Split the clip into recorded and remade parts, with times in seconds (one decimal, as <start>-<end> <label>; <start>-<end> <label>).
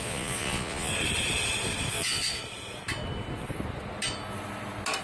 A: 0.0-0.9 remade; 0.9-1.9 recorded; 1.9-2.4 remade; 2.4-5.0 recorded